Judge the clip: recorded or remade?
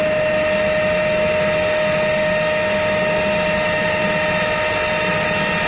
recorded